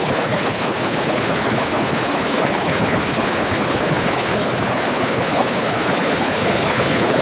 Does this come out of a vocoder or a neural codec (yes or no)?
yes